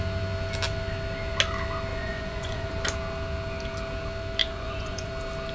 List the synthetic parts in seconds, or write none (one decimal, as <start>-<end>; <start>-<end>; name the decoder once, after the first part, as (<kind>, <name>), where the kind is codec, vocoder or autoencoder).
1.9-2.7 (vocoder, Vocos); 4.4-5.1